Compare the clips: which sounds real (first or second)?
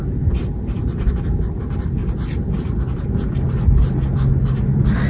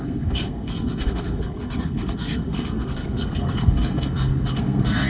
first